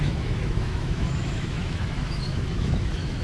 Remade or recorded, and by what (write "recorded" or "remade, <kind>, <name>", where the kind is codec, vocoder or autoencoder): remade, autoencoder, DAC-VAE